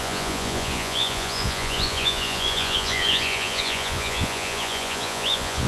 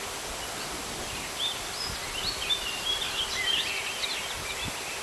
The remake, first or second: first